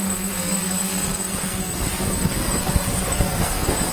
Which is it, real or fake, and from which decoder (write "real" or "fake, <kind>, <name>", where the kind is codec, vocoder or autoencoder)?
fake, codec, SNAC